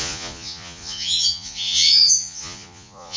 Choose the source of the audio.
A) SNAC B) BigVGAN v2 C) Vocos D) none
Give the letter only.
C